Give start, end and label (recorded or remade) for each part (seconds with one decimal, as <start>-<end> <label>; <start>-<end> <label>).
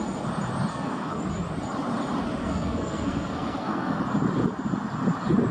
0.0-0.7 recorded; 0.7-1.2 remade; 1.2-2.4 recorded; 2.4-4.0 remade; 4.0-5.5 recorded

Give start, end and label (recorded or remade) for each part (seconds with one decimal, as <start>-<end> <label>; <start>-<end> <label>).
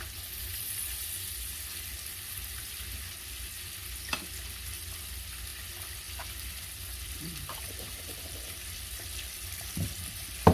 0.0-3.8 remade; 3.8-4.7 recorded; 4.7-10.5 remade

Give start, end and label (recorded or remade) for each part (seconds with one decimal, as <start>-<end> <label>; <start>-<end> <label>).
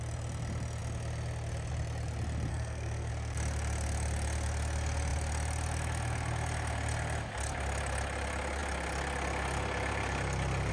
0.0-2.5 recorded; 2.5-3.1 remade; 3.1-10.7 recorded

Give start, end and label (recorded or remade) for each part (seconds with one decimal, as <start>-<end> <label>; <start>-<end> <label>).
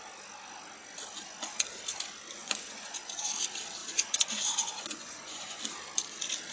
0.0-2.4 recorded; 2.4-3.3 remade; 3.3-3.8 recorded; 3.8-5.6 remade; 5.6-6.5 recorded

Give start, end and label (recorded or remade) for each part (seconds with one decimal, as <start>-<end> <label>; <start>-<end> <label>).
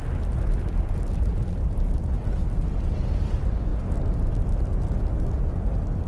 0.0-6.1 recorded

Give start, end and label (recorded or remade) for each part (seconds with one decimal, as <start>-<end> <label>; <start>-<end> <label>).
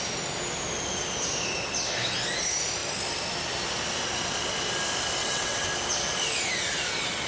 0.0-5.2 recorded; 5.2-5.7 remade; 5.7-7.3 recorded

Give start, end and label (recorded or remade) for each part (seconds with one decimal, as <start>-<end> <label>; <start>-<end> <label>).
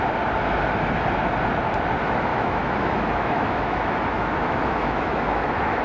0.0-2.3 recorded; 2.3-5.8 remade